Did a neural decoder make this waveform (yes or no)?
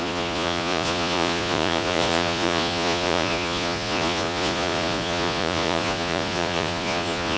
yes